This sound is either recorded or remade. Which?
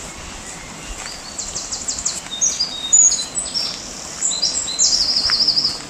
recorded